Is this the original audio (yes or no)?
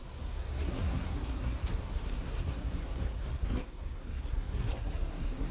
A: no